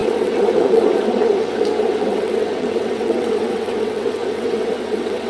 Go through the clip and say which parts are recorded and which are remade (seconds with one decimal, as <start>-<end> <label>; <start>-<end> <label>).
0.0-5.3 remade